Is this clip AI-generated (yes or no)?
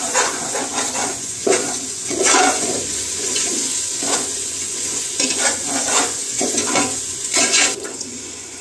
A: yes